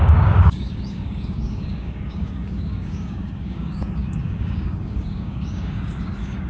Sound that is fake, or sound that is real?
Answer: fake